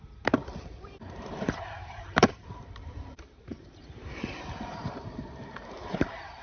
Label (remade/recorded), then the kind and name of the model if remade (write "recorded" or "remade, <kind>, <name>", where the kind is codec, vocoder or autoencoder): remade, vocoder, BigVGAN v2